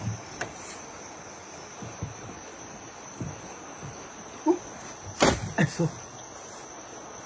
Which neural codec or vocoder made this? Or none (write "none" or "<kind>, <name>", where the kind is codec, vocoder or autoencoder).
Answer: none